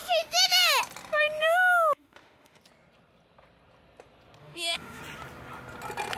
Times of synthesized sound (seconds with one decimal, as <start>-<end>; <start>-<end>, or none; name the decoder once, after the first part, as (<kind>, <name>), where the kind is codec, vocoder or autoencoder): 0.0-0.8 (autoencoder, DAC-VAE); 1.4-2.6; 4.4-5.0